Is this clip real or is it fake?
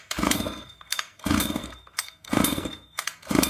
fake